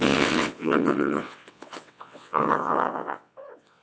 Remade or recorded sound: remade